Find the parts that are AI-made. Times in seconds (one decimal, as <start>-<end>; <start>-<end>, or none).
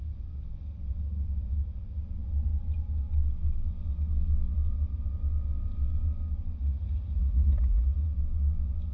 6.6-8.1